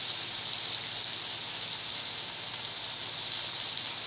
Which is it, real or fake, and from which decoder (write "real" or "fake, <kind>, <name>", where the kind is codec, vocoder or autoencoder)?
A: real